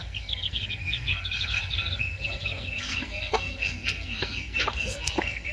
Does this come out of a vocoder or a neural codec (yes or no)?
yes